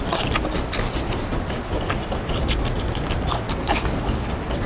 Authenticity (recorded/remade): recorded